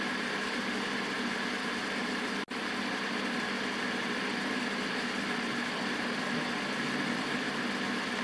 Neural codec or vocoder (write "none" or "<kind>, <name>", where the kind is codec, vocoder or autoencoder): none